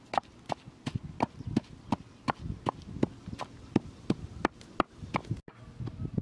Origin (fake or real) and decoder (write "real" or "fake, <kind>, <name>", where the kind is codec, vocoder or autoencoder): real